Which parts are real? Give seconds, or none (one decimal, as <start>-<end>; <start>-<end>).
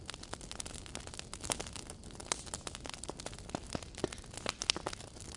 0.0-5.4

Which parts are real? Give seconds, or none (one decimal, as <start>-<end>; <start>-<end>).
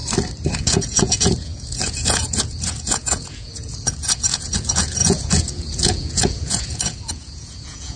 0.0-0.6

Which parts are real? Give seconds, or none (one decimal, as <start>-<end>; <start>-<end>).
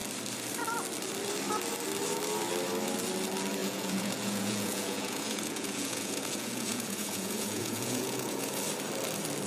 0.0-3.6; 8.6-9.5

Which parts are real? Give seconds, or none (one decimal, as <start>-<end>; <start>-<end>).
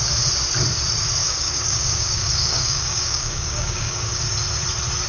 0.0-1.2; 4.3-5.1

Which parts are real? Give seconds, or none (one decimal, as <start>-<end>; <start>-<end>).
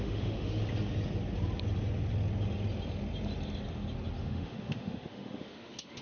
0.6-4.2